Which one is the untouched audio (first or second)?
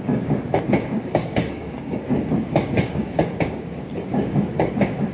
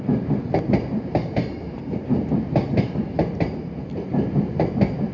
second